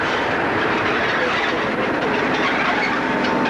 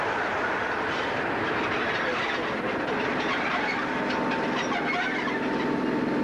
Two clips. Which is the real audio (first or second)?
second